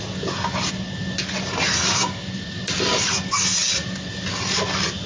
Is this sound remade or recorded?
recorded